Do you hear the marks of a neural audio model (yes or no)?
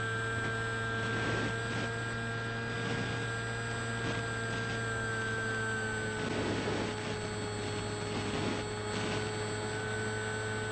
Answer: no